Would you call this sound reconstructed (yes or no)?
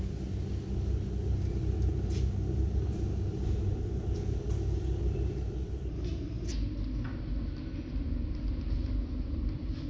no